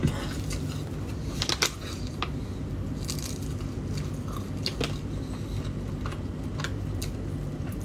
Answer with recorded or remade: recorded